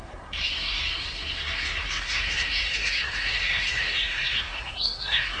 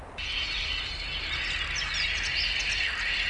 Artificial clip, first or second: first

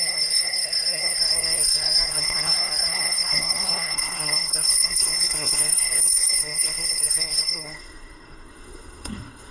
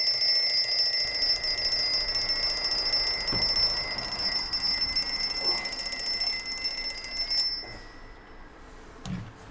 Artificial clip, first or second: first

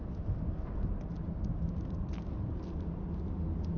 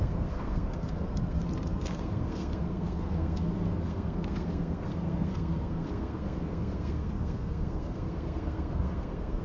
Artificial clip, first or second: second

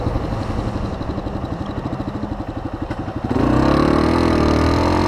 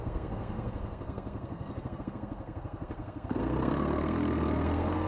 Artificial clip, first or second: second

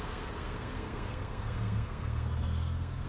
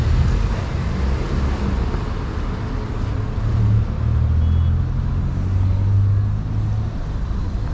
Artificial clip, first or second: first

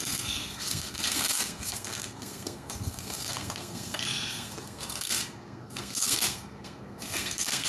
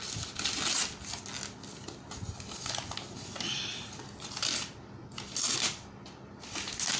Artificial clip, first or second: first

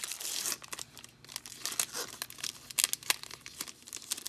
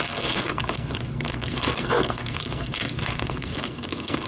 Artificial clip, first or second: second